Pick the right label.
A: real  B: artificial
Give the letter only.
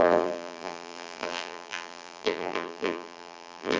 B